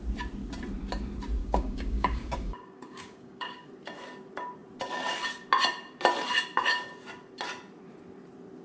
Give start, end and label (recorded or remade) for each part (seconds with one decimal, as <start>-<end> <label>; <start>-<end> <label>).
0.0-1.4 recorded; 1.4-3.7 remade; 3.7-8.6 recorded